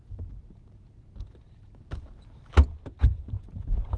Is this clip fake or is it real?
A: real